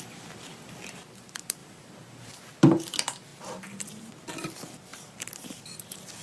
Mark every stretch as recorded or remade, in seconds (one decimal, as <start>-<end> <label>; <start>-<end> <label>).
0.0-1.6 recorded; 1.6-2.3 remade; 2.3-4.9 recorded; 4.9-5.6 remade; 5.6-6.2 recorded